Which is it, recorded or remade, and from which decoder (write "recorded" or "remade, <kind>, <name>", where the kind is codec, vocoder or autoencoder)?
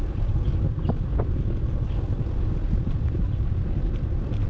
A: remade, vocoder, BigVGAN v2